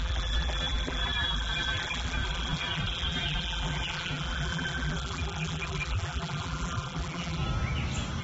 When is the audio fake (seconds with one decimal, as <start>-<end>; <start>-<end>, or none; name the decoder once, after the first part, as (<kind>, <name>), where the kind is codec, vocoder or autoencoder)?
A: 0.0-7.4 (vocoder, BigVGAN v2)